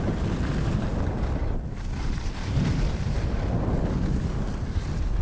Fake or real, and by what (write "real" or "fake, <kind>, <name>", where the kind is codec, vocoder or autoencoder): real